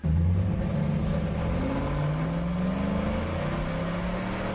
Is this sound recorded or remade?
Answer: recorded